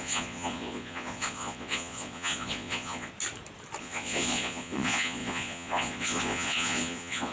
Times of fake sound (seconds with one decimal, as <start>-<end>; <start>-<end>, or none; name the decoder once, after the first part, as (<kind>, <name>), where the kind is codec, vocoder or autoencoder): 0.0-3.1 (vocoder, Vocos); 3.8-7.3